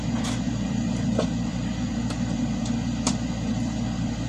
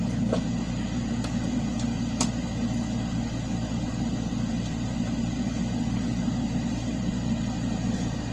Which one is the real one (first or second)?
second